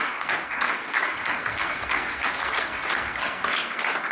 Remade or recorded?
remade